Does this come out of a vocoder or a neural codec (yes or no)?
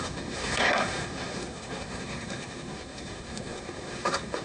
yes